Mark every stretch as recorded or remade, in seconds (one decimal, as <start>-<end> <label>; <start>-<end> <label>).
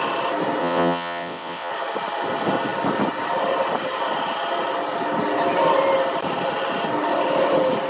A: 0.0-0.6 recorded; 0.6-1.7 remade; 1.7-7.9 recorded